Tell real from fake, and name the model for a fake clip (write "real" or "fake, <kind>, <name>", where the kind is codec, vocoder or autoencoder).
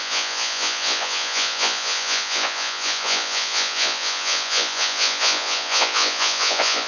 fake, vocoder, Vocos